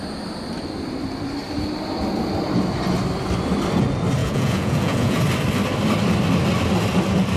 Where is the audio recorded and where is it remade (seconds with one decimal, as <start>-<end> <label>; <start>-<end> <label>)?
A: 0.0-4.2 recorded; 4.2-5.2 remade; 5.2-7.4 recorded